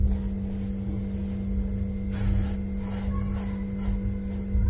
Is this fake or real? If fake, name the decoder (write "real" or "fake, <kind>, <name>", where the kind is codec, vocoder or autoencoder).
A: real